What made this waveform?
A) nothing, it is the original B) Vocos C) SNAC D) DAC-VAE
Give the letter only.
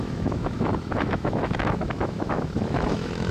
D